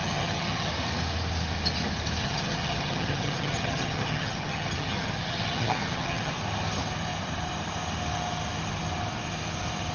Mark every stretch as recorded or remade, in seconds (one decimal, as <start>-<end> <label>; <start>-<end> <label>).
0.0-0.7 remade; 0.7-2.2 recorded; 2.2-6.3 remade; 6.3-9.9 recorded